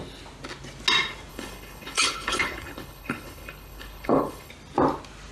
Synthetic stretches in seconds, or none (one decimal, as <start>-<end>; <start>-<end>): 1.3-4.5